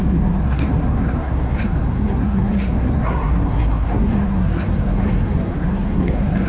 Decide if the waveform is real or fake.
fake